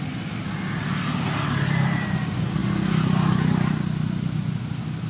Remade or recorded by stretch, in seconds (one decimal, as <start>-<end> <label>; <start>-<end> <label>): 0.0-2.6 remade; 2.6-5.1 recorded